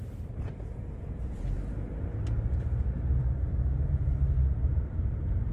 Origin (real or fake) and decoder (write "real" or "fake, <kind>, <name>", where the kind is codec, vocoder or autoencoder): fake, vocoder, BigVGAN v2